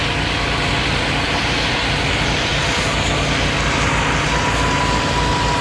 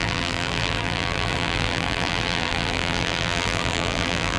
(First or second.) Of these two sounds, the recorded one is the first